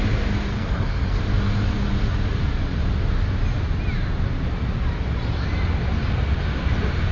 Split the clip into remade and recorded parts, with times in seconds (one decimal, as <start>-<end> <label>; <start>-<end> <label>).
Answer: 0.0-0.5 recorded; 0.5-1.2 remade; 1.2-7.1 recorded